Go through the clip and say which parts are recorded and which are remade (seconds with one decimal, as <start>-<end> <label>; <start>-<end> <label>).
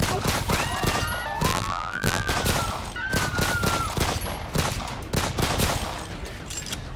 0.0-1.5 recorded; 1.5-2.3 remade; 2.3-7.0 recorded